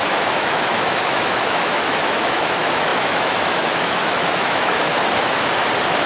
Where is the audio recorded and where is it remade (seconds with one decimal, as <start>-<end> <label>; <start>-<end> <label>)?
0.0-4.9 remade; 4.9-6.1 recorded

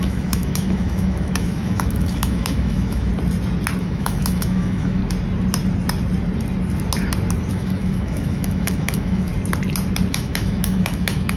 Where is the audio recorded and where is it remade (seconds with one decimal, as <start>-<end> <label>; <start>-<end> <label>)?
0.0-3.1 remade; 3.1-3.8 recorded; 3.8-5.0 remade; 5.0-7.5 recorded; 7.5-9.3 remade; 9.3-10.1 recorded; 10.1-11.4 remade

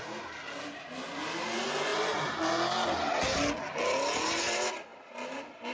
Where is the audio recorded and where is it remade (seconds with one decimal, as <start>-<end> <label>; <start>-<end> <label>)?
0.0-5.7 recorded

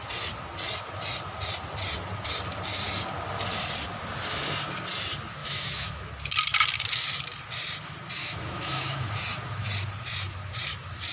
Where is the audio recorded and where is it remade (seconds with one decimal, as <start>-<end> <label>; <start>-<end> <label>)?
0.0-5.4 recorded; 5.4-6.1 remade; 6.1-8.2 recorded; 8.2-9.1 remade; 9.1-11.1 recorded

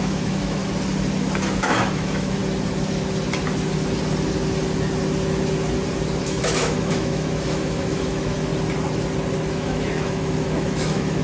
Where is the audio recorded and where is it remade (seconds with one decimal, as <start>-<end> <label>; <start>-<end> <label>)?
0.0-0.6 remade; 0.6-1.6 recorded; 1.6-2.4 remade; 2.4-6.2 recorded; 6.2-8.5 remade; 8.5-9.5 recorded; 9.5-11.2 remade